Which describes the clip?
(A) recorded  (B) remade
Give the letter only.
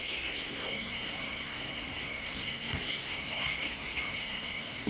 B